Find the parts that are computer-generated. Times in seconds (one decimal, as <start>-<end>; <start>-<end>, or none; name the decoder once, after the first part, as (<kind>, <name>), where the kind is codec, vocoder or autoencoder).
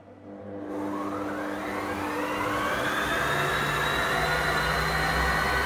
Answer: none